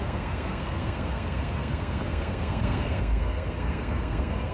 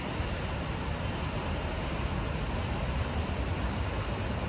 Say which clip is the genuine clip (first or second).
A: second